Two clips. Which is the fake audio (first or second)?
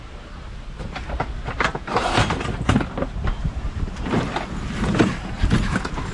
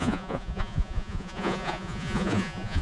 second